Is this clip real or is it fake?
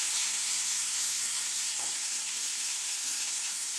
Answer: fake